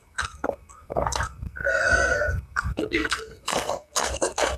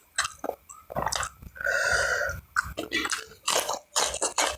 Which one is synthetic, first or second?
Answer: first